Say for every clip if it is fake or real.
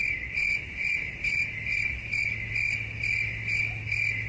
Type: real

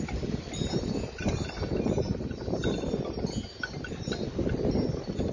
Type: real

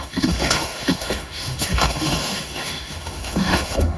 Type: fake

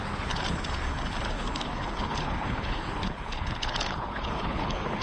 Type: fake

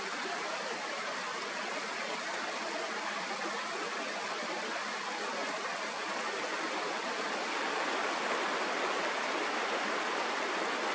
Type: real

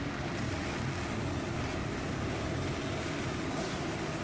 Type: real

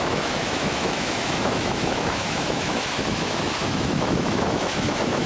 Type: fake